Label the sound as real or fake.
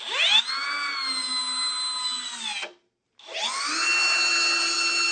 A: real